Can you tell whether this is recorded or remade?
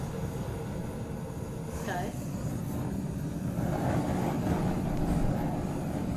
recorded